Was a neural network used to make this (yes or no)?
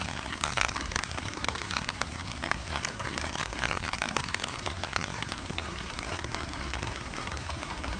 yes